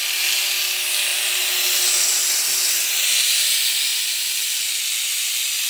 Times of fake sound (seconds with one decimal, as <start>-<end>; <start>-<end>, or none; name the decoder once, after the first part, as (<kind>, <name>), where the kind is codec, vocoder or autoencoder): 3.9-4.7 (vocoder, BigVGAN v2)